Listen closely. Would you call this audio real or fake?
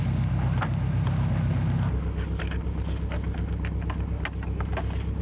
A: real